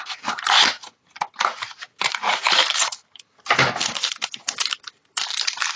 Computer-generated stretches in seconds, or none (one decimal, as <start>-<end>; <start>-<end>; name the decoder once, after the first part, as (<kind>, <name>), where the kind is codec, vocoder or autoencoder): 1.9-4.7 (vocoder, BigVGAN v2)